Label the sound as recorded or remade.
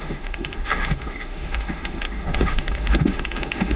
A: remade